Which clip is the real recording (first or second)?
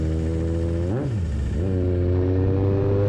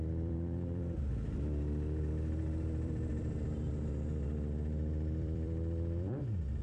first